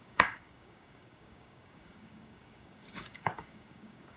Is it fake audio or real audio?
fake